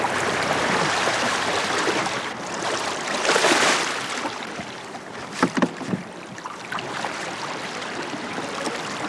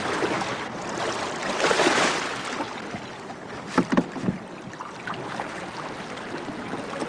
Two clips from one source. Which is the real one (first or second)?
second